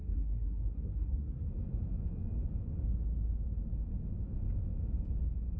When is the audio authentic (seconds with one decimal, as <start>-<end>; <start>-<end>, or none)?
1.5-5.6